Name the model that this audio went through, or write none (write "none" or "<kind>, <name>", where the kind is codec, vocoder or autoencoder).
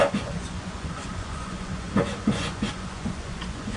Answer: vocoder, Vocos